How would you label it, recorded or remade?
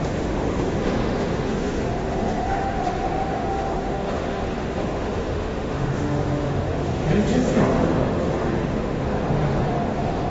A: remade